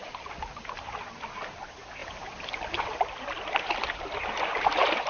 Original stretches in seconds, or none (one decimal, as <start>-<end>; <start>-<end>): 0.0-5.1